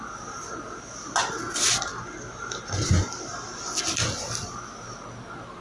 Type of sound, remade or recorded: recorded